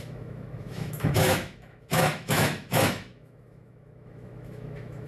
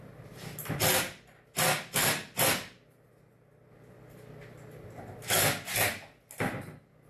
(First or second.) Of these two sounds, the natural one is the second